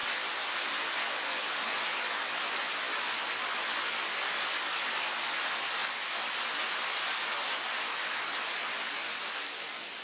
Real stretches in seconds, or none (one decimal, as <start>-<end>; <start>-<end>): 0.0-10.0

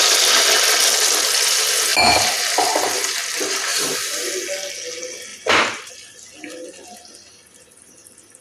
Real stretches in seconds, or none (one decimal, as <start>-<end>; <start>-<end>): 0.0-3.7; 4.3-5.3; 5.9-8.4

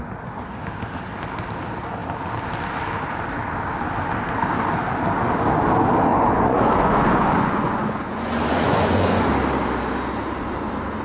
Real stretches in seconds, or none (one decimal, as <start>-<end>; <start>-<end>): 0.0-6.1; 9.3-11.0

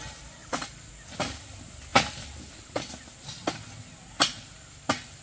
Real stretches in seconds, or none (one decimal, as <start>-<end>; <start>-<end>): 0.0-0.4; 0.9-5.2

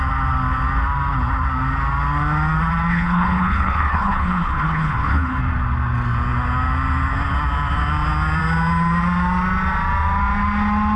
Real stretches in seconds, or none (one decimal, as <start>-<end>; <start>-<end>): 0.0-2.9; 5.4-11.0

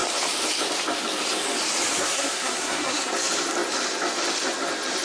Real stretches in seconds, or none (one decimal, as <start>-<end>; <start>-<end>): 0.0-2.0; 3.1-5.0

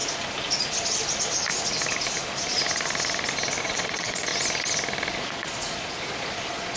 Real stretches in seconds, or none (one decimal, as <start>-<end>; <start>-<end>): 0.0-3.6; 4.3-5.1

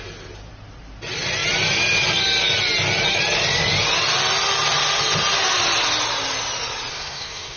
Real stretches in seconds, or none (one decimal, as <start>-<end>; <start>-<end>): 0.0-6.9